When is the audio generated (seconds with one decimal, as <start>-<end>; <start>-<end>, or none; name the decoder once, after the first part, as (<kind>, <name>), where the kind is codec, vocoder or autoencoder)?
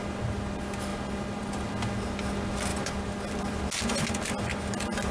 none